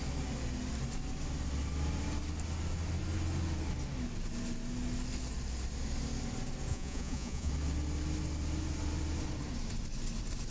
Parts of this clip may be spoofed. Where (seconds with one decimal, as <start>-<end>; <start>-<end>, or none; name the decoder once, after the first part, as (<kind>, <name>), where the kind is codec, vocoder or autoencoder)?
6.7-7.5 (vocoder, Vocos)